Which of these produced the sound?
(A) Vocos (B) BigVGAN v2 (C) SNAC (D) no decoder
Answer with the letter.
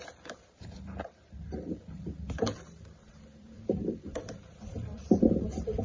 B